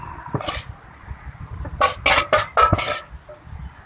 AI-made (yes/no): no